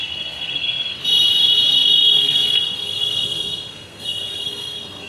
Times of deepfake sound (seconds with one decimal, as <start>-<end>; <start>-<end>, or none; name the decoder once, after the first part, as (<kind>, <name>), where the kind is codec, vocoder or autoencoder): 0.0-1.0 (codec, SNAC); 1.7-5.1